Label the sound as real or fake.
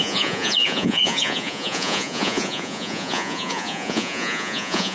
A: fake